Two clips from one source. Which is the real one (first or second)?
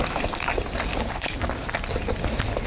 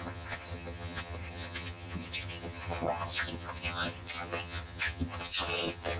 first